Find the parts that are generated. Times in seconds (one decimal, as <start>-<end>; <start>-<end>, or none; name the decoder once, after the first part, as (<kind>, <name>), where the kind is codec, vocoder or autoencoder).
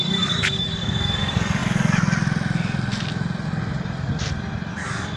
0.0-1.6 (codec, DAC); 4.7-5.2